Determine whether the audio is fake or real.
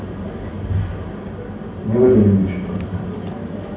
real